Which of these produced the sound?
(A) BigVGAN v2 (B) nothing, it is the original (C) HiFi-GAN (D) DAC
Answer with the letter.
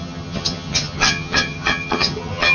C